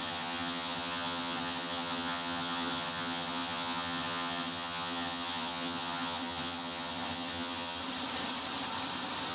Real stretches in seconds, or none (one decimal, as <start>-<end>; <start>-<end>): 7.8-9.3

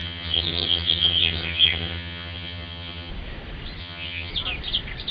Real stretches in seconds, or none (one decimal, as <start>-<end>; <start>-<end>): 3.1-3.8; 4.3-5.1

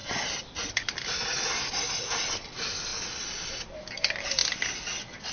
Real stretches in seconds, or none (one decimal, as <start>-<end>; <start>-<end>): 0.0-5.3

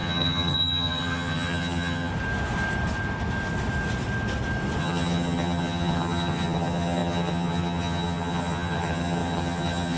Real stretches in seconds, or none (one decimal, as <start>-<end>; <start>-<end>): 2.1-4.8

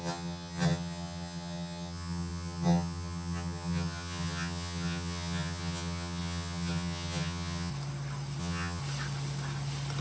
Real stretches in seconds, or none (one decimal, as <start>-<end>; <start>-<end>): 7.7-8.4; 8.8-10.0